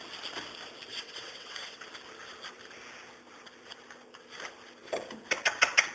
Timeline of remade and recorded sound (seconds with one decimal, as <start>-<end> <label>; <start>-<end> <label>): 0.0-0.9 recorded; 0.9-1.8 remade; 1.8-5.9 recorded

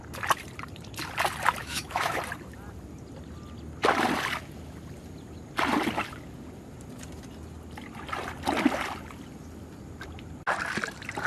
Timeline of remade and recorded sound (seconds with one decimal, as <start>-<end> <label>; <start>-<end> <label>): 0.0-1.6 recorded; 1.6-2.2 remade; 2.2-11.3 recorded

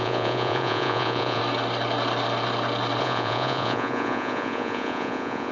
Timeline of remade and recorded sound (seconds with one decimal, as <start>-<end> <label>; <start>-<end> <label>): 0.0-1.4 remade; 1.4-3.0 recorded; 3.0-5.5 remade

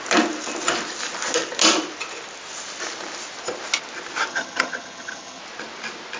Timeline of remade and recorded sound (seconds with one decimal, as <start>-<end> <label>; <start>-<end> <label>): 0.0-4.3 recorded; 4.3-5.4 remade; 5.4-6.2 recorded

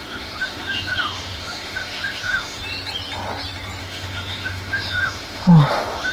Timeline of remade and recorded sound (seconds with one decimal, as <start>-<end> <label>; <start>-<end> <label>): 0.0-2.6 remade; 2.6-3.8 recorded; 3.8-6.1 remade

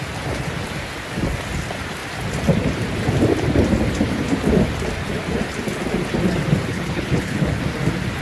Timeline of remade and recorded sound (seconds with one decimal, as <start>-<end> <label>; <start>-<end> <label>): 0.0-6.7 recorded; 6.7-7.6 remade; 7.6-8.2 recorded

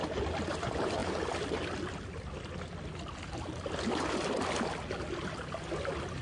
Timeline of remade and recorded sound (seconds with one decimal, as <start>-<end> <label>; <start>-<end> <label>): 0.0-6.2 recorded